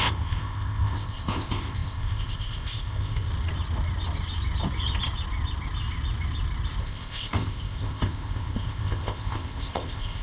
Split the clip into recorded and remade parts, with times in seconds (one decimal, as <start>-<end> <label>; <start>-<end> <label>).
0.0-3.3 remade; 3.3-6.8 recorded; 6.8-10.2 remade